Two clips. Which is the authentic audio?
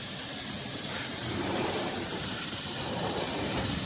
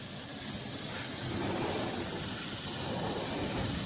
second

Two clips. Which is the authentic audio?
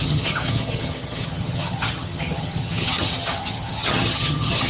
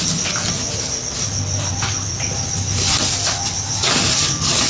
second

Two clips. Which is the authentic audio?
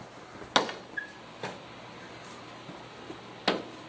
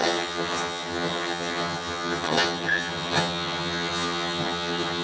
first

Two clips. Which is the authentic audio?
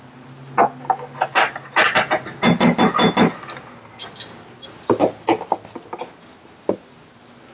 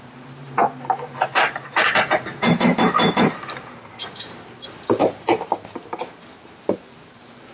first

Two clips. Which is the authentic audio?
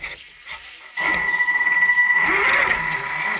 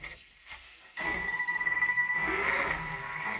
first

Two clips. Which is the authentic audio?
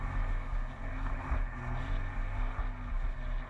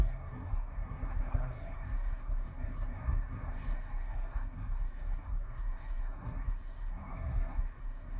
first